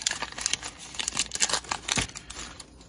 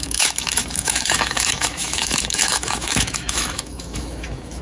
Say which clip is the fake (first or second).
second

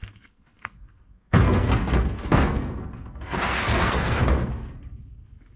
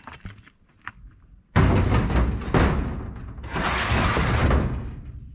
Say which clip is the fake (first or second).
first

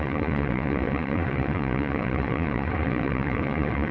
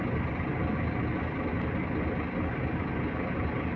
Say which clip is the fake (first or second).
first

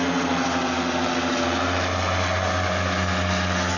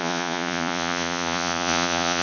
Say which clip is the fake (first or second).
second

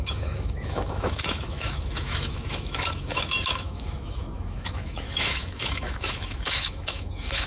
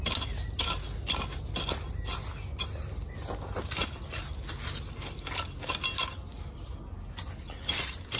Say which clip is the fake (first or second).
first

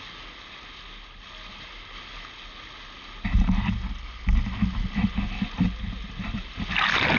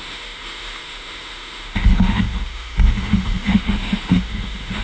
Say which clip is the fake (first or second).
second